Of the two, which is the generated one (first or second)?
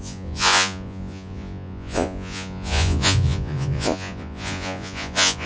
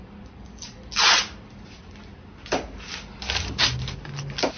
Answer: first